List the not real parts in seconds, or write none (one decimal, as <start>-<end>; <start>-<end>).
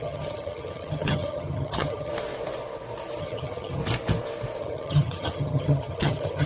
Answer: 0.0-2.1; 3.2-3.8; 4.6-6.5